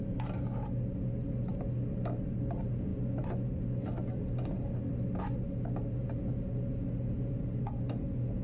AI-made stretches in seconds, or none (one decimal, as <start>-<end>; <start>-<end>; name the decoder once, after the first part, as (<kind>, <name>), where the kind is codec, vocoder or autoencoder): none